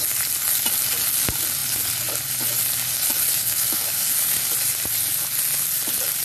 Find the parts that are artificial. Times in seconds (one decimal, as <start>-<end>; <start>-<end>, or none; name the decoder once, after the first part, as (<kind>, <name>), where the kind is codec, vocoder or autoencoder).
3.4-4.1 (codec, SNAC)